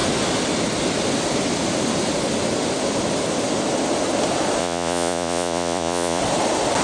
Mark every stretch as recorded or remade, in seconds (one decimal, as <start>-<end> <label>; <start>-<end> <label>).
0.0-4.6 recorded; 4.6-6.2 remade; 6.2-6.8 recorded